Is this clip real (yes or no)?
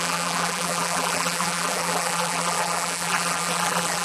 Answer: no